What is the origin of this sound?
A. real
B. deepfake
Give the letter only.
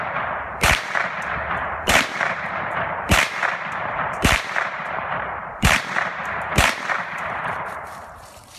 B